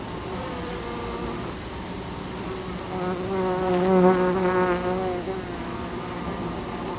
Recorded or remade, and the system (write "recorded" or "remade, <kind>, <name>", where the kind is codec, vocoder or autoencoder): recorded